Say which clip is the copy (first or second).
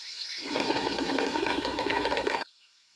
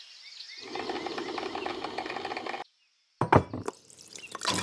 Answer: first